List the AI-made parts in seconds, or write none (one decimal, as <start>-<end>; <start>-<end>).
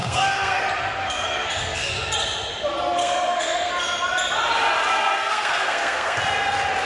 0.0-0.6; 1.0-1.9; 3.0-3.7; 5.2-6.2